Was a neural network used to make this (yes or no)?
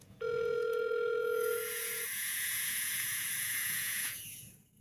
yes